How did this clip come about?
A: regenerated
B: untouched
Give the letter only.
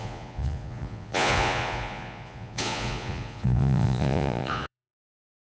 A